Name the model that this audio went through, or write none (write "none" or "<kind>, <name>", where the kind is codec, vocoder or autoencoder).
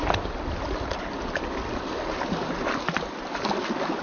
none